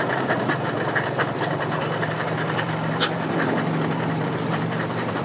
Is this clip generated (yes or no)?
yes